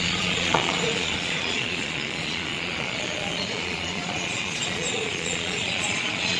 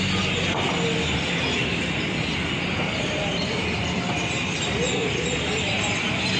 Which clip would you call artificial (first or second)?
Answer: first